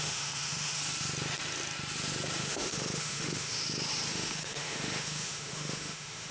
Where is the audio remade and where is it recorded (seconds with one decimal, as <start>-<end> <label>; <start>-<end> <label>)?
0.0-0.8 remade; 0.8-2.4 recorded; 2.4-3.6 remade; 3.6-4.1 recorded; 4.1-6.3 remade